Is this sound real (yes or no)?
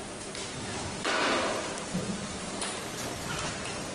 no